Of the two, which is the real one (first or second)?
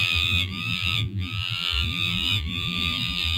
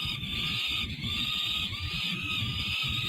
second